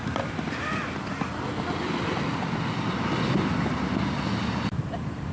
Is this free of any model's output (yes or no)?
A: yes